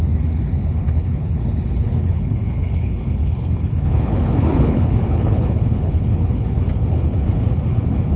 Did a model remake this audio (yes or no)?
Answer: yes